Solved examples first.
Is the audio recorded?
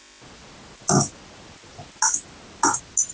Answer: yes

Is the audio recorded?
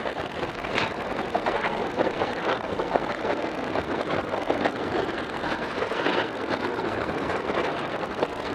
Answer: no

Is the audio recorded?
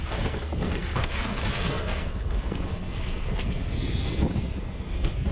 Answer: no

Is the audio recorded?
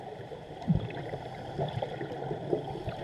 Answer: no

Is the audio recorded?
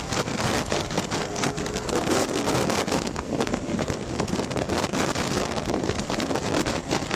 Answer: no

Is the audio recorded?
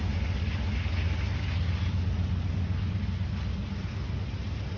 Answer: yes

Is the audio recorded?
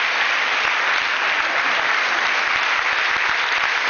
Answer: yes